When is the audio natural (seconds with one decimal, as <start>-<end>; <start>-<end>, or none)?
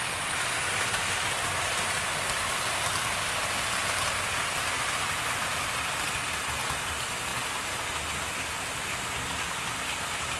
0.0-10.4